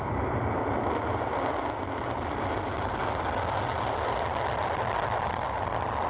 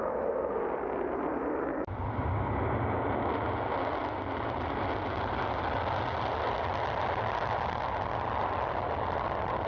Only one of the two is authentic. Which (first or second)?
second